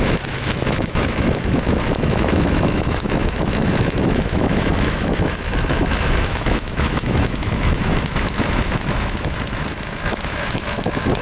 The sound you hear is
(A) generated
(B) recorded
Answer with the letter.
A